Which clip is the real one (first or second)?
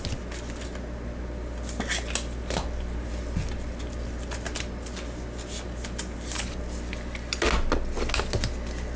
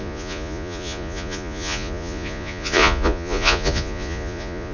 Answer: first